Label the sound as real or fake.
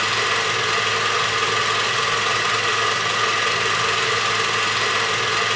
real